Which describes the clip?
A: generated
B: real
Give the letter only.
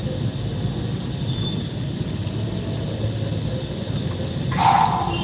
B